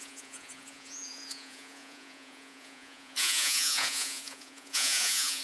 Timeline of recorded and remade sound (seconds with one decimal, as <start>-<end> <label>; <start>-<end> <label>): 0.0-5.4 remade